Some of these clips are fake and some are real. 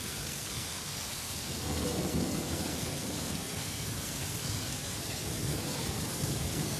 fake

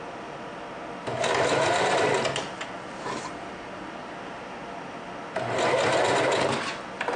real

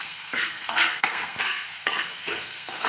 fake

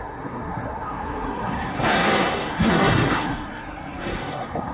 fake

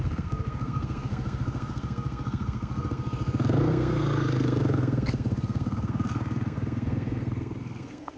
fake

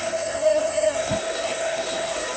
fake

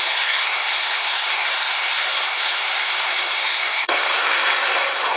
fake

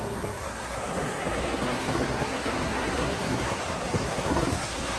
fake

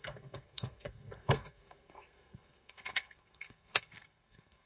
fake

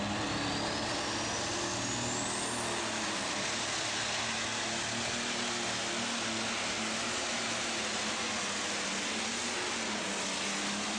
real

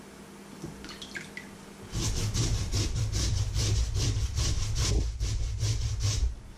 real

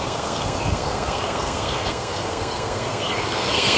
fake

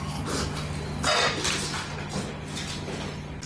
real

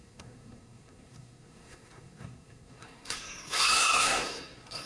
fake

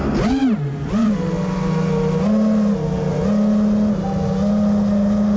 real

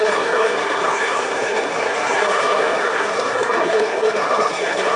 fake